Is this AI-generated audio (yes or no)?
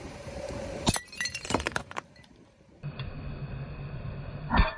yes